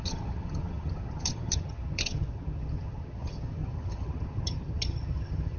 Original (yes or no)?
no